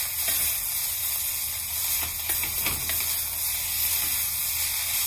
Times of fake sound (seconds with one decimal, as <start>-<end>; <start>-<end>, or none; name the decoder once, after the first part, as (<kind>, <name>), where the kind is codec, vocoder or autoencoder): none